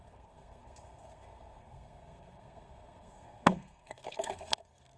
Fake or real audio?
fake